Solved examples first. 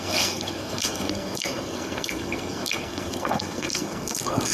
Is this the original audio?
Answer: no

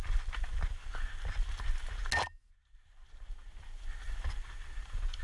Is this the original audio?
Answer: yes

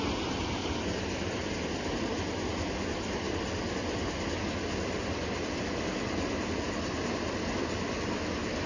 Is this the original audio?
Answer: yes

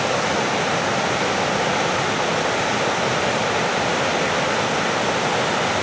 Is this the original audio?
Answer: yes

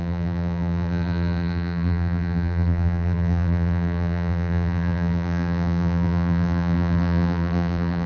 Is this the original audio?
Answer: no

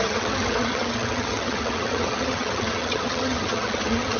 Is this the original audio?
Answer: no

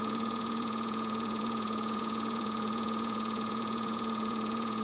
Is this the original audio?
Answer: no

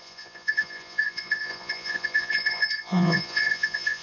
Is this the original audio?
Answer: no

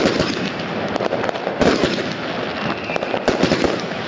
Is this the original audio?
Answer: yes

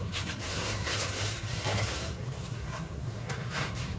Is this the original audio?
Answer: no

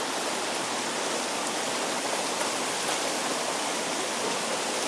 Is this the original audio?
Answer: yes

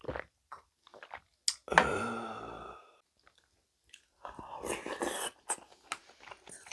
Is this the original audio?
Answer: yes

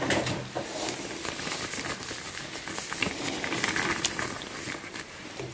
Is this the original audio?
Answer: no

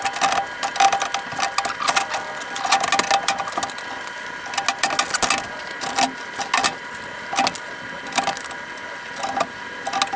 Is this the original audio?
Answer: yes